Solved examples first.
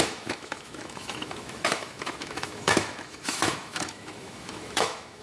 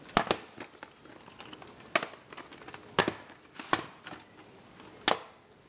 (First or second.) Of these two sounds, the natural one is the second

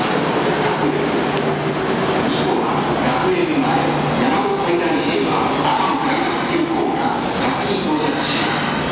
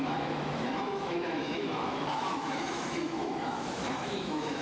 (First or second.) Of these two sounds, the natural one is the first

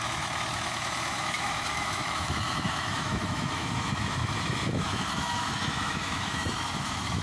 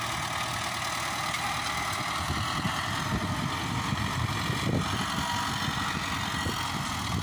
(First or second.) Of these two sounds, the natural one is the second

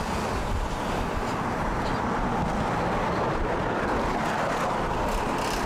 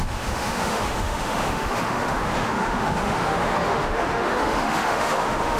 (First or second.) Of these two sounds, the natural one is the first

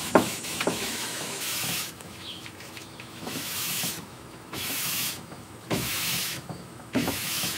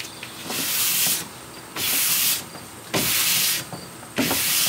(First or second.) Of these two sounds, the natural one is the second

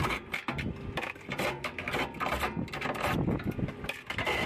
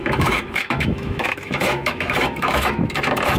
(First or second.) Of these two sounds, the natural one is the first